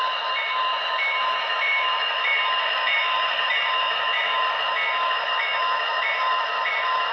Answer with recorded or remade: remade